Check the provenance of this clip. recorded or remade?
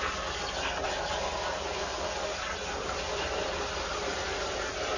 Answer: recorded